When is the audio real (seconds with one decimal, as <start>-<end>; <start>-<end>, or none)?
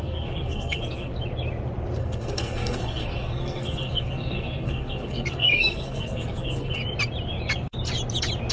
1.1-2.0; 6.8-8.5